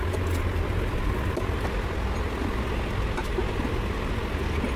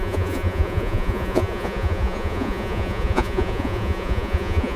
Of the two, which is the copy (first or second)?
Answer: second